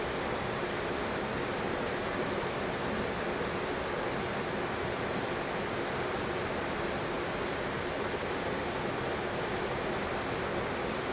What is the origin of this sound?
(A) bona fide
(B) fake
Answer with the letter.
A